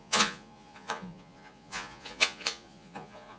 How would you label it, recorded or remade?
remade